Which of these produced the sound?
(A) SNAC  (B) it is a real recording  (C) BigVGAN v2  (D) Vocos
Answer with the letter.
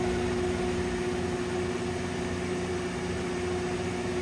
B